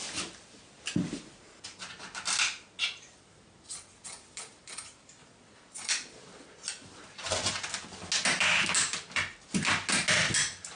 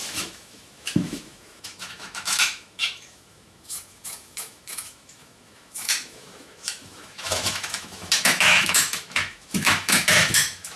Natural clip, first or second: first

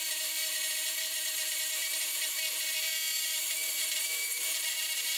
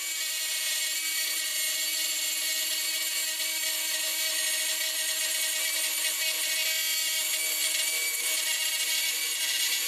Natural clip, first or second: second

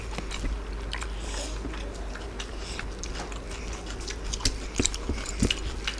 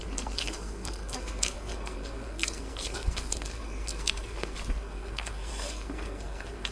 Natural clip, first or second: first